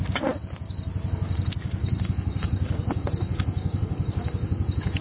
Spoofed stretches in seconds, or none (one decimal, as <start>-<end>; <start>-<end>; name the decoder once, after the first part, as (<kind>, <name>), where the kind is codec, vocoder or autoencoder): 1.8-5.0 (codec, DAC)